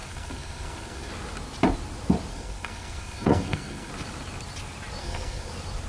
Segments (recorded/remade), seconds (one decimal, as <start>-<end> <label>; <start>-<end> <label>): 0.0-1.1 remade; 1.1-2.3 recorded; 2.3-3.9 remade; 3.9-5.0 recorded; 5.0-5.5 remade; 5.5-5.9 recorded